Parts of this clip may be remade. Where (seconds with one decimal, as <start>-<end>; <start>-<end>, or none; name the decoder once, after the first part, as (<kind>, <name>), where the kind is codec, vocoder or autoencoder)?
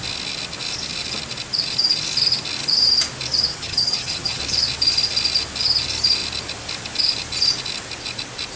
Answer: 3.5-4.4 (vocoder, HiFi-GAN)